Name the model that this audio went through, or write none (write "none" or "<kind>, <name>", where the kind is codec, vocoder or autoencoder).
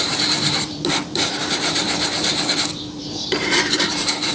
vocoder, BigVGAN v2